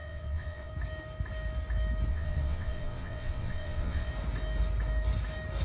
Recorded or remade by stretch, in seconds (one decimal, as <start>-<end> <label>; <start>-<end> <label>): 0.0-0.7 remade; 0.7-2.1 recorded; 2.1-4.1 remade; 4.1-5.6 recorded